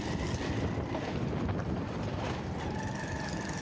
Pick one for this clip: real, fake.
real